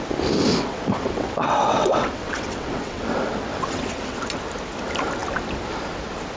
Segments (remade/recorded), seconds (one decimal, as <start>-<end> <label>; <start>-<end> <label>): 0.0-0.5 recorded; 0.5-4.3 remade; 4.3-6.4 recorded